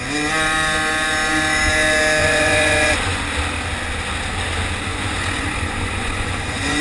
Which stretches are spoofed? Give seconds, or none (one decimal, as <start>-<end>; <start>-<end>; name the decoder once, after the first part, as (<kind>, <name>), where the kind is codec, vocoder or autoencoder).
2.2-3.2 (vocoder, Vocos); 4.9-6.8